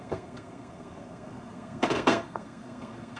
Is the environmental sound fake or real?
fake